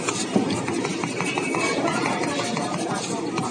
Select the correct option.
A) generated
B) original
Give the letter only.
B